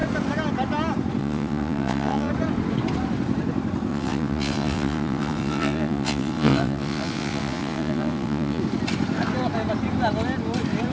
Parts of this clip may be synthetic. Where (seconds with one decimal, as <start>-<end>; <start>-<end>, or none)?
1.2-2.3; 3.9-8.6